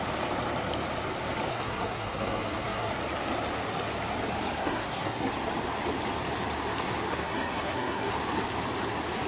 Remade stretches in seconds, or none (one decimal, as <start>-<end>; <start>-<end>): 1.5-2.9; 4.6-5.3; 7.1-8.1